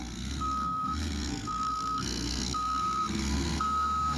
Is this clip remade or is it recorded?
remade